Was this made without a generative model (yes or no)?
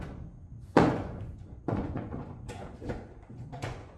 no